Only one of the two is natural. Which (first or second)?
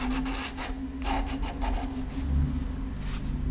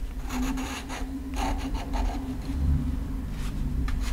first